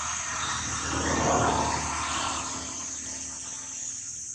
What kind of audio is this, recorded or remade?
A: recorded